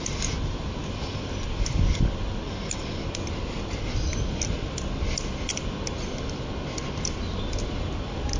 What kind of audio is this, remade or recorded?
recorded